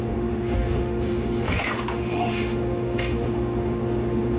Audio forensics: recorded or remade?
remade